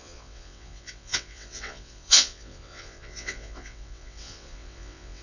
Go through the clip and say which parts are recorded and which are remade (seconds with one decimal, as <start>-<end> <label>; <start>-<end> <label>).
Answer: 0.0-5.2 remade

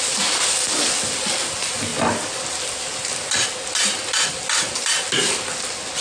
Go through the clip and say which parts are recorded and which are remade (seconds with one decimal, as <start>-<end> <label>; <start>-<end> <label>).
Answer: 0.0-6.0 recorded